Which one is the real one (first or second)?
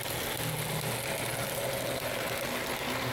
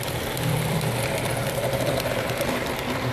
first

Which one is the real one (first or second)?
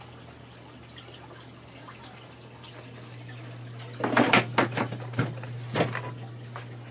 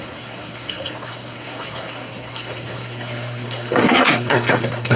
first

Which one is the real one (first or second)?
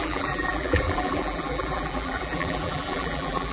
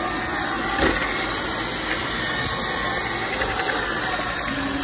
second